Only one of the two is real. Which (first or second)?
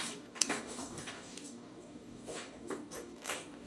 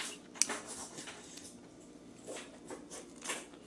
second